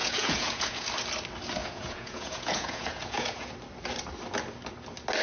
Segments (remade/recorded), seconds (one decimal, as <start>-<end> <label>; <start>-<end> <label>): 0.0-0.9 remade; 0.9-1.6 recorded; 1.6-3.5 remade; 3.5-5.2 recorded